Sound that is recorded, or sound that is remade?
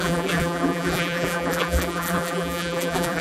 remade